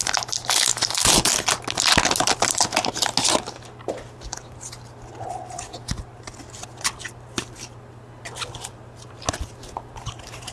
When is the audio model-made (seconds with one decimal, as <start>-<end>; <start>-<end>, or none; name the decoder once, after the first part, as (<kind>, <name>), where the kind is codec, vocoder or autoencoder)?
0.7-1.2 (vocoder, BigVGAN v2)